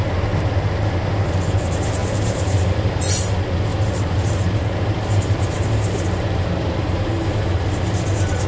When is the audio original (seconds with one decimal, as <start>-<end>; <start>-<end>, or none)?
0.0-2.0; 3.0-3.7; 7.1-8.5